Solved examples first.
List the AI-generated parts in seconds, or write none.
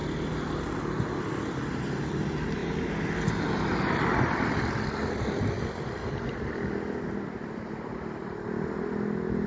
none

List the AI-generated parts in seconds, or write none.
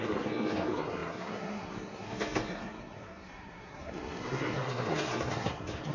0.0-5.9 (codec, SNAC)